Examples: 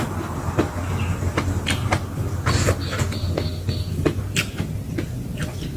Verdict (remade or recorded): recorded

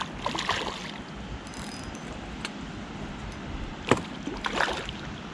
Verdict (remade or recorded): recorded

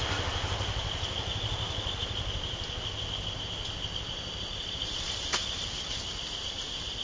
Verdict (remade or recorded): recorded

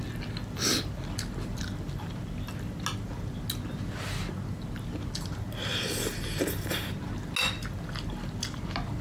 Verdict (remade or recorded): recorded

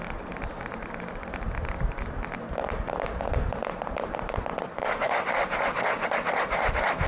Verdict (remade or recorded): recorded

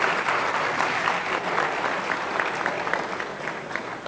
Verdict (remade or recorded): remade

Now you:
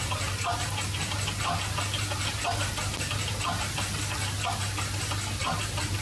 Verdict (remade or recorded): recorded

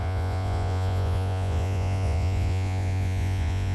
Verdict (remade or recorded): remade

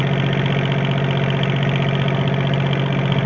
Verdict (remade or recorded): recorded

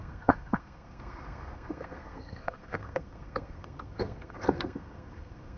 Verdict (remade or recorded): remade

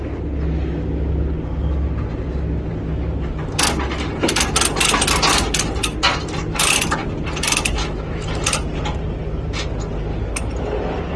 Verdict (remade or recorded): recorded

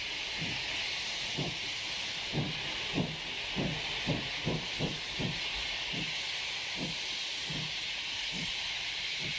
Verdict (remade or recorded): recorded